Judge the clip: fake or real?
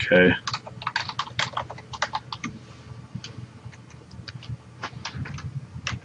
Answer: real